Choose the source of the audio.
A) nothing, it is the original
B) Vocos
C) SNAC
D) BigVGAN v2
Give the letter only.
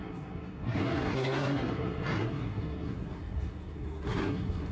C